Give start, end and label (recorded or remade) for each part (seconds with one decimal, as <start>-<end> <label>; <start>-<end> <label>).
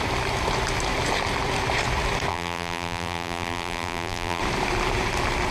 0.0-2.3 recorded; 2.3-4.4 remade; 4.4-5.5 recorded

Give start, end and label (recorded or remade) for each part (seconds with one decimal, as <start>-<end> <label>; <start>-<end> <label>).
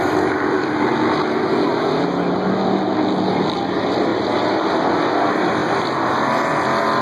0.0-0.9 remade; 0.9-3.3 recorded; 3.3-7.0 remade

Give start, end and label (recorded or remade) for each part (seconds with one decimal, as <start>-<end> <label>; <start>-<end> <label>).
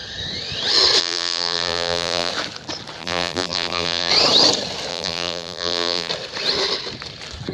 0.0-1.0 recorded; 1.0-2.3 remade; 2.3-3.0 recorded; 3.0-4.1 remade; 4.1-4.9 recorded; 4.9-6.1 remade; 6.1-7.5 recorded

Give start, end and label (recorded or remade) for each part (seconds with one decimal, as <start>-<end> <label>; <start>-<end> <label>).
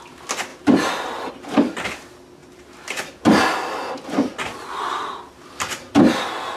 0.0-0.5 recorded; 0.5-1.3 remade; 1.3-6.6 recorded